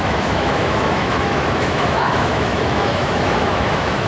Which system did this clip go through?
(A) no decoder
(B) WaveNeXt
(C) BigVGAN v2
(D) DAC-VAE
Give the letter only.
D